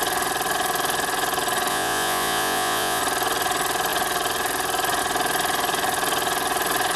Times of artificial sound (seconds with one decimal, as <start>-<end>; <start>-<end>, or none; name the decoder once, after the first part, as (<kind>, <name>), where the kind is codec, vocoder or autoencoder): 1.7-3.0 (vocoder, Vocos)